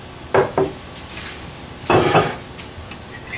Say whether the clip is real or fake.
real